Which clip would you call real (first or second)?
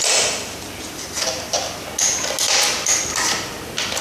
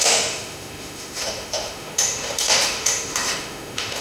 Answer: first